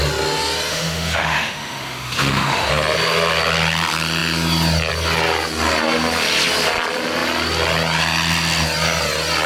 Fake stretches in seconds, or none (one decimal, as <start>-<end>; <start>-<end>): 0.7-2.7